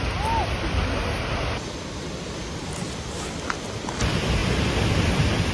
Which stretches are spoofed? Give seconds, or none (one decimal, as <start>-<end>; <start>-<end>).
none